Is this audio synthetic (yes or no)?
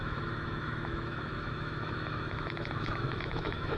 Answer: yes